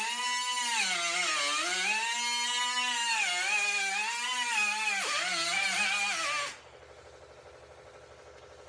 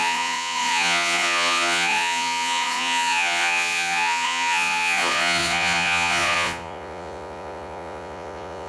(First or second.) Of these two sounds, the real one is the first